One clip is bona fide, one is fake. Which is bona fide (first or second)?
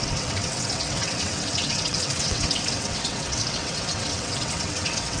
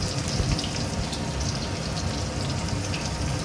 second